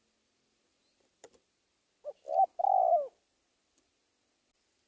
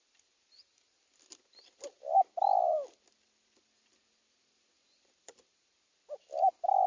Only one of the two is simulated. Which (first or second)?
second